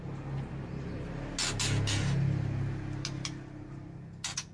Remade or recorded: recorded